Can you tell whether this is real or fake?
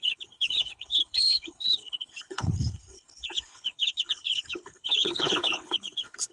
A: fake